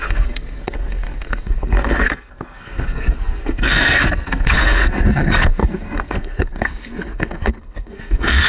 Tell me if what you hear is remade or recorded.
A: remade